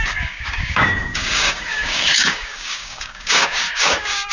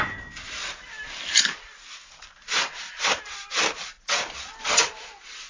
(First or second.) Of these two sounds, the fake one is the first